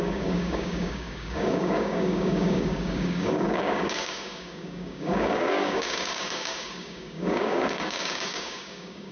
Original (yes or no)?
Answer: no